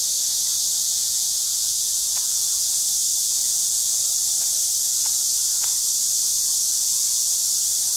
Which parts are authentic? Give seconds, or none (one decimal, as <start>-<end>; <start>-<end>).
0.0-0.8; 2.7-3.2; 4.0-6.7; 7.3-8.0